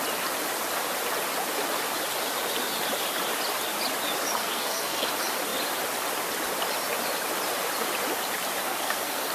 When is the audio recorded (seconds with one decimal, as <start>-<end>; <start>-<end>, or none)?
0.0-4.4; 5.1-8.6